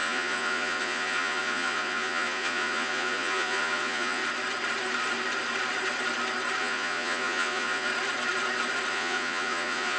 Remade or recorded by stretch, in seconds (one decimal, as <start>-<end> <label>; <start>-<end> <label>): 0.0-4.2 remade; 4.2-6.6 recorded; 6.6-7.9 remade; 7.9-8.9 recorded; 8.9-10.0 remade